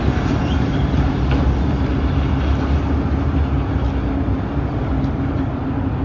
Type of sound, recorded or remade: recorded